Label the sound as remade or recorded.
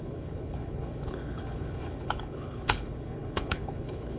remade